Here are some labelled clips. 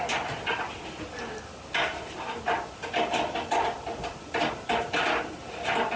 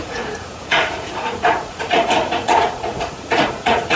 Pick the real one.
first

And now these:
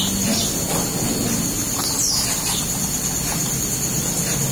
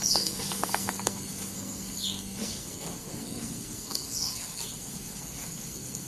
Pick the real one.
first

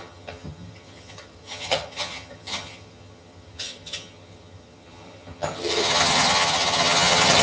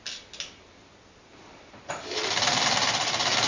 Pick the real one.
second